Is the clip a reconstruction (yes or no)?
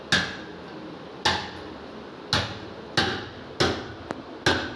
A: no